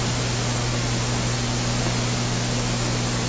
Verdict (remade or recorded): recorded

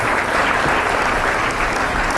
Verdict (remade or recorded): recorded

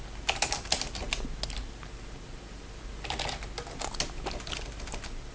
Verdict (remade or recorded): recorded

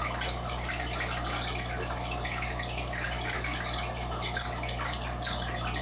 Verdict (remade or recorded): recorded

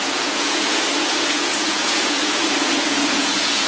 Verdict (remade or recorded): remade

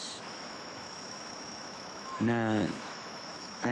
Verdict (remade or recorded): remade